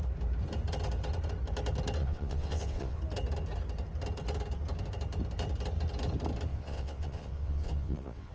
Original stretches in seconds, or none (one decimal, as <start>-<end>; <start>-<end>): 0.0-2.0; 3.0-6.5